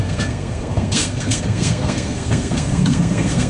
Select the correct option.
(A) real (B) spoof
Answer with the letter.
B